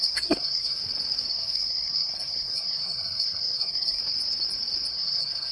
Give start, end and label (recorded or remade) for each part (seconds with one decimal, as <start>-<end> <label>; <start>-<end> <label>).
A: 0.0-0.8 remade; 0.8-1.3 recorded; 1.3-4.0 remade; 4.0-4.9 recorded; 4.9-5.5 remade